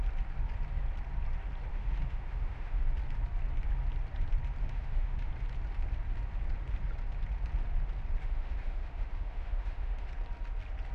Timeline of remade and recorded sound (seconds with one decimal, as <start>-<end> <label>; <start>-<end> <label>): 0.0-1.7 recorded; 1.7-2.8 remade; 2.8-4.6 recorded; 4.6-5.3 remade; 5.3-8.2 recorded; 8.2-10.1 remade; 10.1-10.9 recorded